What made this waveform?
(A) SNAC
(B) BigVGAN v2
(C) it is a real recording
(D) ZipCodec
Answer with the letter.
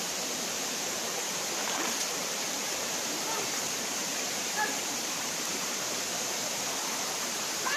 B